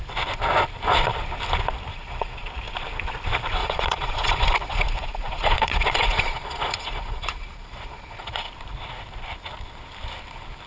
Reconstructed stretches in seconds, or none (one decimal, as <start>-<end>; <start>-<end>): 1.9-2.5; 3.6-8.5